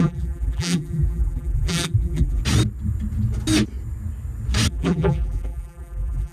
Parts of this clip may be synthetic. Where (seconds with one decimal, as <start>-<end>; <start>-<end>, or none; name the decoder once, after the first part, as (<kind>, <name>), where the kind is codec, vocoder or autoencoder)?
0.0-2.4 (vocoder, BigVGAN v2); 4.7-6.3